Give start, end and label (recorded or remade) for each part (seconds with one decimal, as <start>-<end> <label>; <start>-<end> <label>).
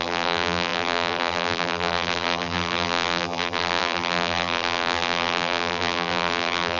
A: 0.0-6.8 remade